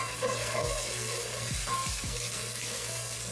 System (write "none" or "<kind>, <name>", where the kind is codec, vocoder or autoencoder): codec, SNAC